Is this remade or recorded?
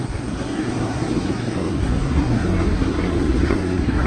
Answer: remade